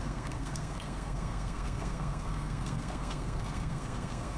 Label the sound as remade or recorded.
remade